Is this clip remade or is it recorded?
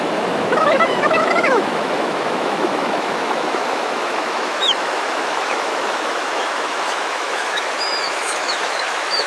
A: remade